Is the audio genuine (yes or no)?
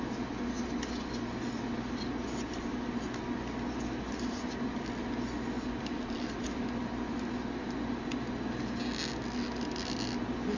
yes